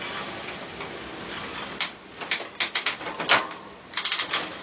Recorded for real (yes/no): yes